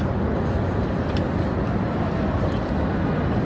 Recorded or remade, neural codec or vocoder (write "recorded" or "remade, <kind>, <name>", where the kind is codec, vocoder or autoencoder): recorded